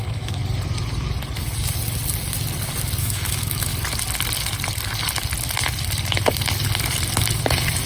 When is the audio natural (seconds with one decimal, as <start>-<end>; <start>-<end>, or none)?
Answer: 0.4-3.0; 3.7-7.9

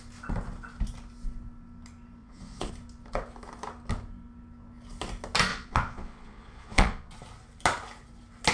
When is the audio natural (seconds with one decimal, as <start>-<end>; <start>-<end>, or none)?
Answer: 0.0-2.2; 2.7-5.5; 7.1-8.5

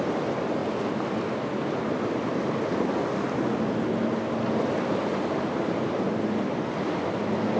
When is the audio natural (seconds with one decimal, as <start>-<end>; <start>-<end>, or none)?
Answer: 0.0-7.6

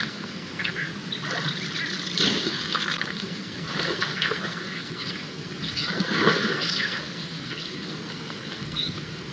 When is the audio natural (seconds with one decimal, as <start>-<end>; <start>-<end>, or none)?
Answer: 0.9-2.3